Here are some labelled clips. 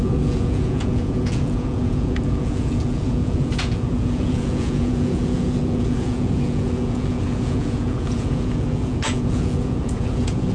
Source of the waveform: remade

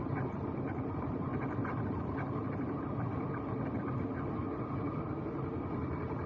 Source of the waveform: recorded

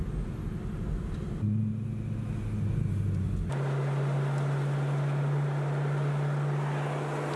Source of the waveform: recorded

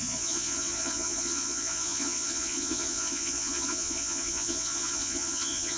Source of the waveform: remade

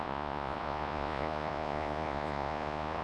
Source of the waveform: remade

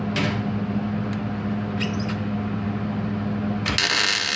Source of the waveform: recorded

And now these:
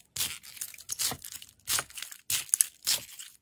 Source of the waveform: recorded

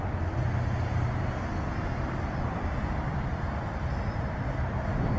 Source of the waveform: recorded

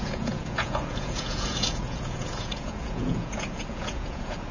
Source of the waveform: remade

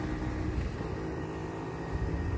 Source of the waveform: recorded